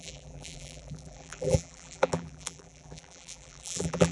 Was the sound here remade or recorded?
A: remade